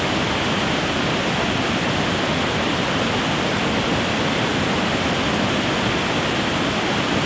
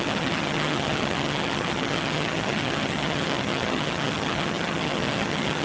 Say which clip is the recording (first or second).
first